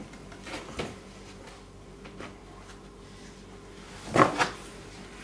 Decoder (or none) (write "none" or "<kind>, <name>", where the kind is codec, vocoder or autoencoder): none